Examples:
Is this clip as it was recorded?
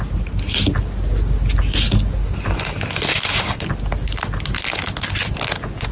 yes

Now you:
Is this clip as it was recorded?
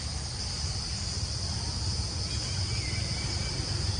yes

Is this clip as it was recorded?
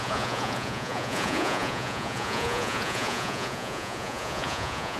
no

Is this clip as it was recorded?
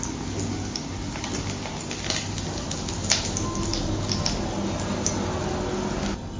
yes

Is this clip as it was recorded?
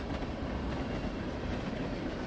yes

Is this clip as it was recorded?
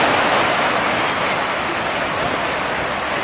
yes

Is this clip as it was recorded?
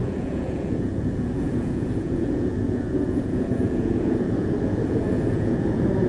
no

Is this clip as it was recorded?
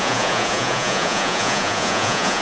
no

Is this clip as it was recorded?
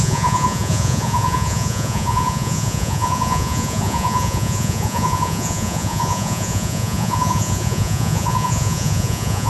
no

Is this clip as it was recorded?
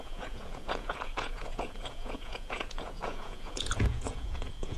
no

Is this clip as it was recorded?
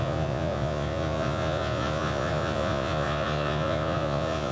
no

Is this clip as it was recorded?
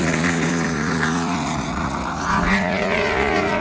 no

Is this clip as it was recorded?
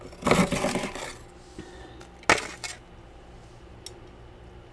yes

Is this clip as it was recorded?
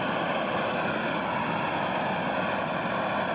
yes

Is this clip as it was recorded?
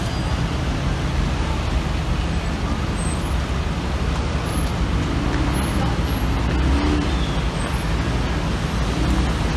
yes